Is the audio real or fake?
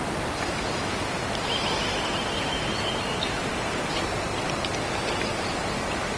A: real